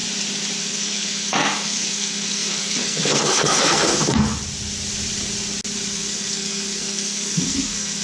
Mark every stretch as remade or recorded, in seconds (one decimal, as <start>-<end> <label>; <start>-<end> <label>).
0.0-0.6 recorded; 0.6-4.4 remade; 4.4-5.9 recorded; 5.9-8.0 remade